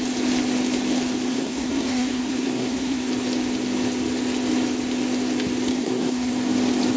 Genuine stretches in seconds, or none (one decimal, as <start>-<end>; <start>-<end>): 0.0-1.3; 3.1-5.7; 6.3-7.0